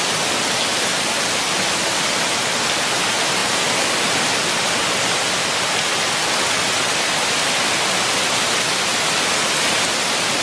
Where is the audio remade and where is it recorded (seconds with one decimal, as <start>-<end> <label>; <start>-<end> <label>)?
0.0-10.4 recorded